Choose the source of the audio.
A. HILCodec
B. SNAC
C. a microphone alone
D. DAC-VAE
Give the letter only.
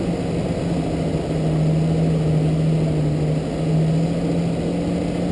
C